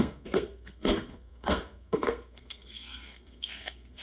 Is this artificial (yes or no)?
yes